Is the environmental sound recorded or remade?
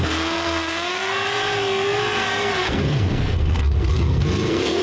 remade